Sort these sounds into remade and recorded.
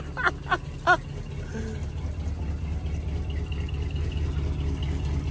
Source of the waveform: recorded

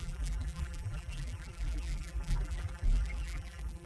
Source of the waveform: remade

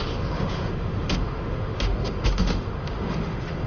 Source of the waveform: remade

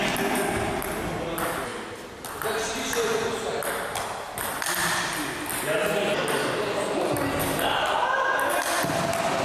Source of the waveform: recorded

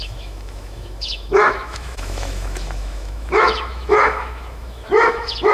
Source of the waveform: remade